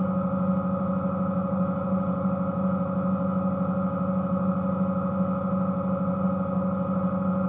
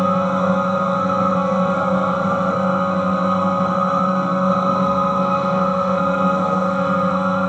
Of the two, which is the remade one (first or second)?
second